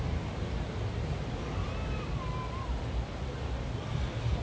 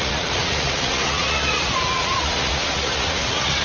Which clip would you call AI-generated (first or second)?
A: second